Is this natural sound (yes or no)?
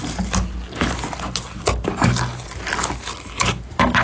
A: yes